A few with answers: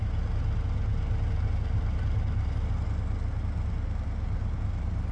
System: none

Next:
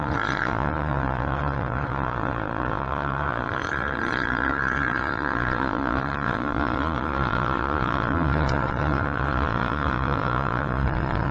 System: vocoder, Vocos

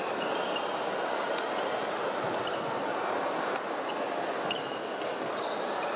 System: none